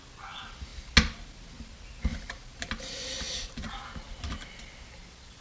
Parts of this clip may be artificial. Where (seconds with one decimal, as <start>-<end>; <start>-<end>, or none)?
none